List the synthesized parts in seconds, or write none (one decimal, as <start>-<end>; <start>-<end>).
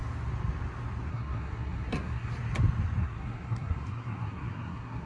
1.1-2.3; 3.0-5.1